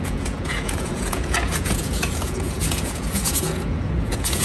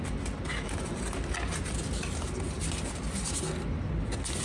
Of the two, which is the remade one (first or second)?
first